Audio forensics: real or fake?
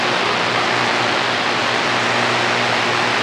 real